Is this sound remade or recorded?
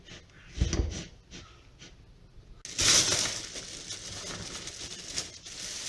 recorded